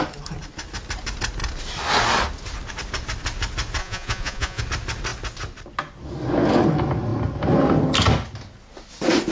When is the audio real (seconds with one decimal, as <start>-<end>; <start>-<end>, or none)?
0.0-3.8; 4.6-9.3